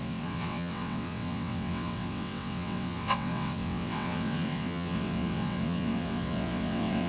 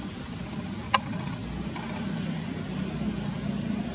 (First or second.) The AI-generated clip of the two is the first